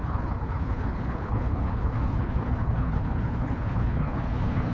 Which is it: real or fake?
fake